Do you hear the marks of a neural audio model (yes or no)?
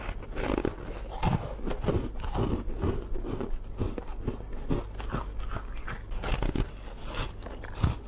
no